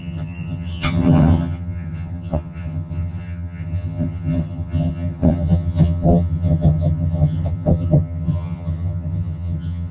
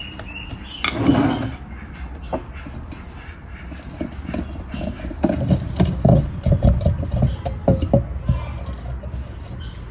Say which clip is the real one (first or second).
second